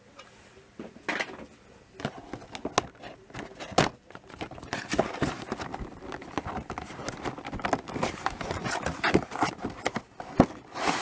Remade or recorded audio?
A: recorded